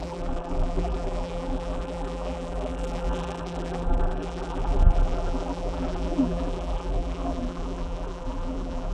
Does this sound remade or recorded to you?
remade